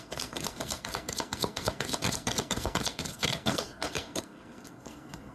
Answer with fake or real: fake